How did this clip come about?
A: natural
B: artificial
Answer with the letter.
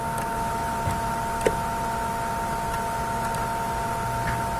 A